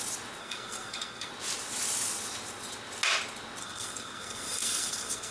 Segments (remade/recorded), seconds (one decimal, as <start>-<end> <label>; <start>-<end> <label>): 0.0-0.4 recorded; 0.4-1.3 remade; 1.3-3.6 recorded; 3.6-5.3 remade